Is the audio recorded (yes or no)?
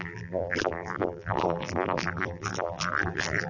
no